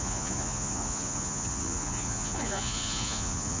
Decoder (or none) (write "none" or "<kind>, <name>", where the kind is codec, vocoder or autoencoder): vocoder, Vocos